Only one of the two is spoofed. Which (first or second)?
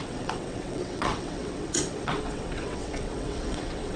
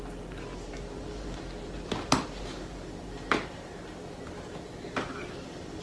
first